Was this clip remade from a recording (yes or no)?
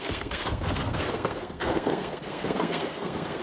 yes